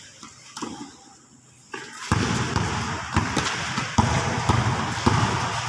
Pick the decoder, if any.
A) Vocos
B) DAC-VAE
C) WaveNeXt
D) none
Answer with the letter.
D